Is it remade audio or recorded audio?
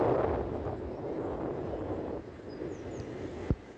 recorded